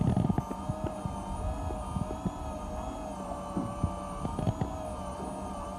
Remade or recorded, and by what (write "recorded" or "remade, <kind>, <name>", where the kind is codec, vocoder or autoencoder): recorded